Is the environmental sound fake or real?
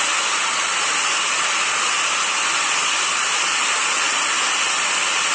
real